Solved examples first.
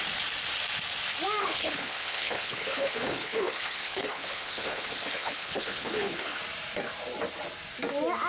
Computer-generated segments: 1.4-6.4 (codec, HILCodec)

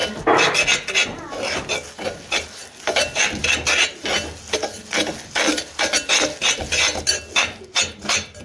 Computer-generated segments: none

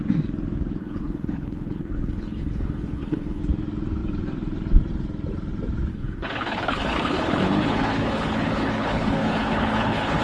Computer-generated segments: 0.8-3.4 (codec, HILCodec); 5.9-10.2

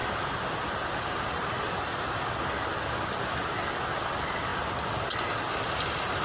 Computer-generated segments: none

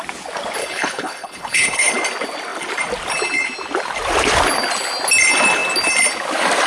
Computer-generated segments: 0.6-1.9 (codec, HILCodec)

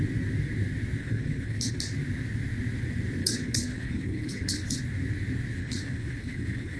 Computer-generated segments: 1.0-1.8 (codec, HILCodec); 3.2-4.8; 5.6-6.8

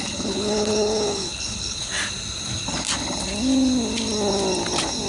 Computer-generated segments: 0.0-1.9 (codec, HILCodec)